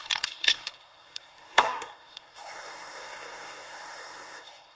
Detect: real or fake fake